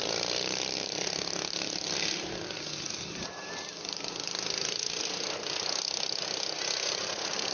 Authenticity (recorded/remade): recorded